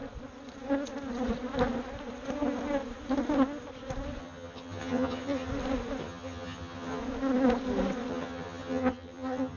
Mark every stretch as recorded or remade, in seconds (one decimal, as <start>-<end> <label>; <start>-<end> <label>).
0.0-4.2 recorded; 4.2-5.5 remade; 5.5-6.0 recorded; 6.0-7.0 remade; 7.0-8.1 recorded; 8.1-9.6 remade